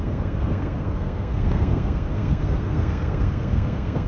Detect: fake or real fake